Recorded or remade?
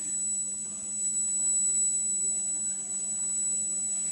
recorded